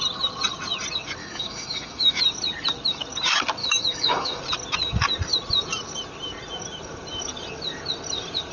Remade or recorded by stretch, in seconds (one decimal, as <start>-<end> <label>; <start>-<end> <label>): 0.0-1.2 recorded; 1.2-2.2 remade; 2.2-3.6 recorded; 3.6-4.4 remade; 4.4-8.5 recorded